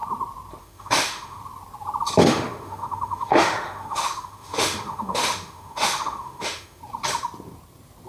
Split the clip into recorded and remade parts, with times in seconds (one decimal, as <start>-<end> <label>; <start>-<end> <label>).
0.0-0.6 recorded; 0.6-1.4 remade; 1.4-2.2 recorded; 2.2-6.8 remade; 6.8-8.1 recorded

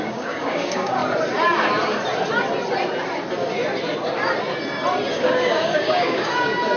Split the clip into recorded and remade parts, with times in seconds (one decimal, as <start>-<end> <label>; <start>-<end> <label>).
0.0-1.0 remade; 1.0-5.1 recorded; 5.1-6.8 remade

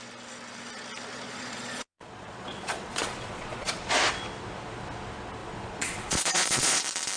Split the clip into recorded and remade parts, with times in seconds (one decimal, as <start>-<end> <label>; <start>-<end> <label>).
0.0-1.1 recorded; 1.1-3.8 remade; 3.8-5.4 recorded; 5.4-6.8 remade; 6.8-7.2 recorded

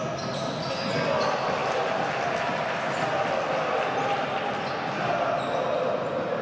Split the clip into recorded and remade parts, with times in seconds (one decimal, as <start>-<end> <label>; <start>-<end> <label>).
0.0-6.4 recorded

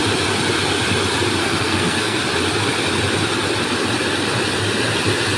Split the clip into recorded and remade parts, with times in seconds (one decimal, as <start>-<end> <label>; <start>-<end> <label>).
0.0-1.4 recorded; 1.4-2.2 remade; 2.2-5.4 recorded

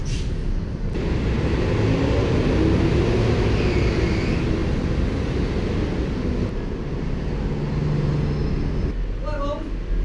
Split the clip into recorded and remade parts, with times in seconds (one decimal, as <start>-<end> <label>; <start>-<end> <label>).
0.0-10.0 recorded